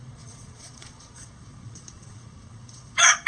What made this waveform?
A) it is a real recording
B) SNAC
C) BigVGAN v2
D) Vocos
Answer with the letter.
D